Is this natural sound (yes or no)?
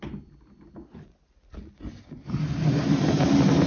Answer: yes